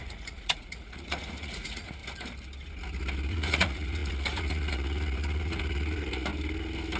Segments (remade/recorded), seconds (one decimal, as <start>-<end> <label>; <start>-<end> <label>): 0.0-2.0 remade; 2.0-3.3 recorded; 3.3-6.3 remade; 6.3-7.0 recorded